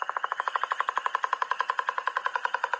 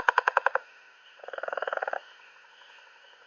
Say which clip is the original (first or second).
first